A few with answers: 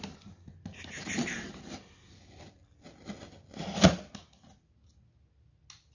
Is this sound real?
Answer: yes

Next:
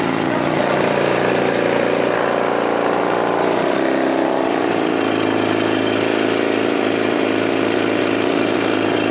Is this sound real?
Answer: yes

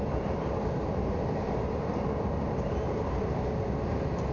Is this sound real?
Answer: yes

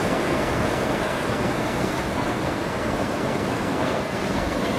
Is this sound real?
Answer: no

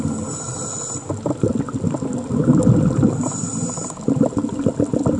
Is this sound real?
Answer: yes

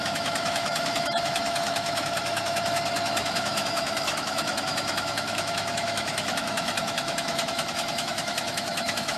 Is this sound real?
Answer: no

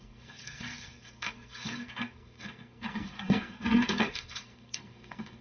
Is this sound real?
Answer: no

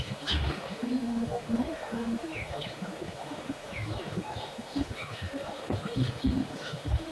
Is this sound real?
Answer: no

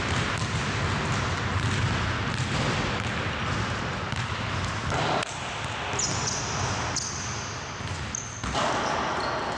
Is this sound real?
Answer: yes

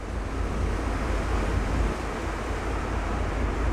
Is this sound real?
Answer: yes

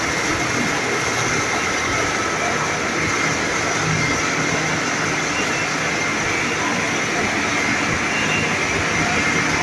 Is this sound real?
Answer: yes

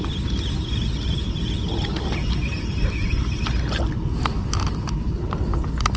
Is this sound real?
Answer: yes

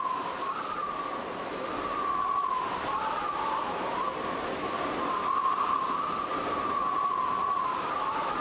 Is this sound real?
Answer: yes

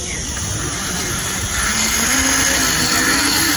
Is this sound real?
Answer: yes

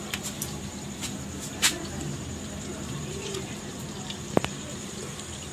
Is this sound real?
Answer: no